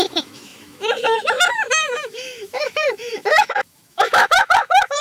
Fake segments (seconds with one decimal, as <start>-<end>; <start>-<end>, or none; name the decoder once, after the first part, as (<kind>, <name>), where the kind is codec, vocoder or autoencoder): 0.0-5.0 (autoencoder, DAC-VAE)